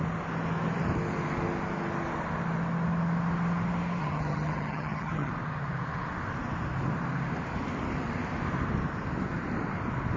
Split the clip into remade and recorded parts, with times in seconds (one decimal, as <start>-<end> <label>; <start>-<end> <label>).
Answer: 0.0-4.0 recorded; 4.0-5.3 remade; 5.3-10.2 recorded

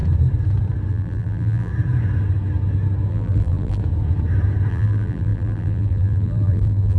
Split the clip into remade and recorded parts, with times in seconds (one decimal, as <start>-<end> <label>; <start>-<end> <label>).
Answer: 0.0-0.9 recorded; 0.9-1.7 remade; 1.7-3.1 recorded; 3.1-3.8 remade; 3.8-4.7 recorded; 4.7-7.0 remade

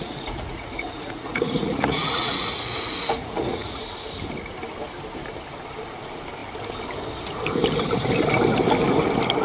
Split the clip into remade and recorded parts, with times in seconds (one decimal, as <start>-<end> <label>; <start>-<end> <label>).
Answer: 0.0-3.8 remade; 3.8-9.4 recorded

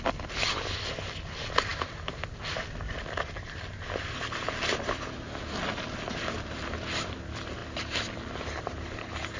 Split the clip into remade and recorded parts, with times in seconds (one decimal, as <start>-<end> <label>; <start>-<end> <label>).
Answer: 0.0-9.4 recorded

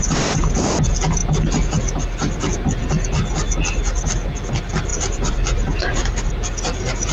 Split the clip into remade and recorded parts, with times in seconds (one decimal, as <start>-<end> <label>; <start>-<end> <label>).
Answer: 0.0-4.9 recorded; 4.9-6.3 remade; 6.3-7.1 recorded